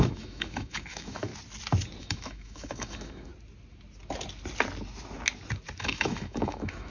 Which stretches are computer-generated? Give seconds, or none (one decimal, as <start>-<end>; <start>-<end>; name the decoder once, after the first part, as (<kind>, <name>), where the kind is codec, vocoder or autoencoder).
0.0-1.3 (autoencoder, DAC-VAE); 2.0-3.3; 5.8-6.9